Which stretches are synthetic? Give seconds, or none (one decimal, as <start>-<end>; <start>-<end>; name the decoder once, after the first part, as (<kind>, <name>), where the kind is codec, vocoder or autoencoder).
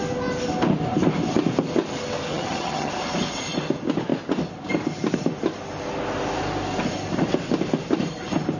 2.3-2.9 (vocoder, HiFi-GAN)